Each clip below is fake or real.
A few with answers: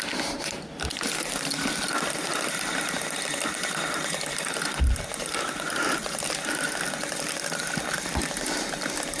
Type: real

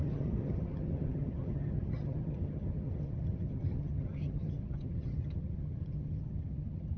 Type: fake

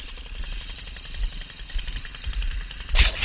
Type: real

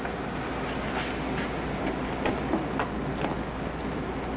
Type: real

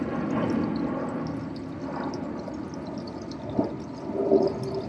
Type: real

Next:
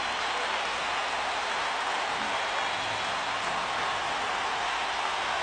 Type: real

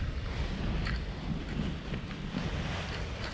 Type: real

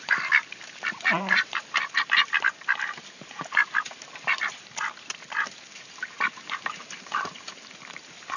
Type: fake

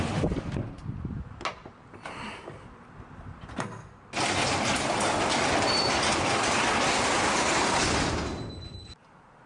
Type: real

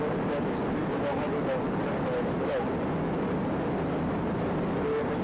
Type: real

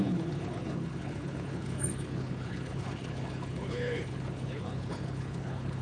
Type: fake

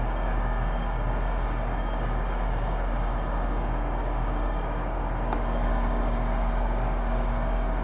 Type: fake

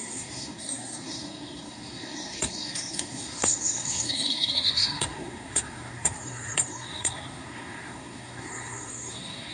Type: fake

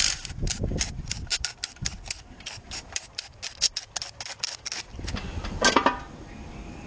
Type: real